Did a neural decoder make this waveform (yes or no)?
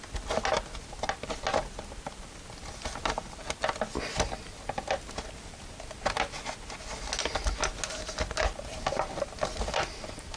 no